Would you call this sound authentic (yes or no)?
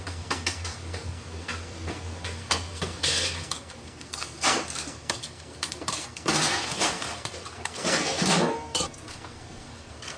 no